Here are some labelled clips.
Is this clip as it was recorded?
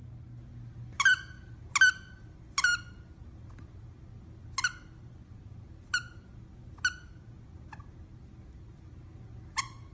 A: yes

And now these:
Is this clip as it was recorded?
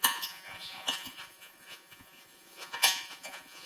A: no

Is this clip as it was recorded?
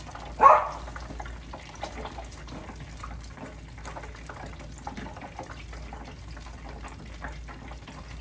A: yes